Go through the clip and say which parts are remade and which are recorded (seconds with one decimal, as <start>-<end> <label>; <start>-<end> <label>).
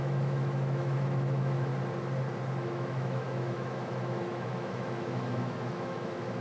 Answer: 0.0-1.7 remade; 1.7-2.6 recorded; 2.6-6.4 remade